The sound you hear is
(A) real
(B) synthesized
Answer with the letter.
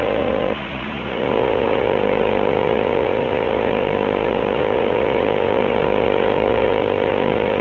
B